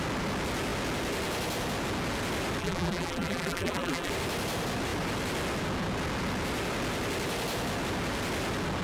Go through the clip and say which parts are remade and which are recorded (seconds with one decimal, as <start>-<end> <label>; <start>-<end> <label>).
0.0-2.6 recorded; 2.6-4.1 remade; 4.1-8.8 recorded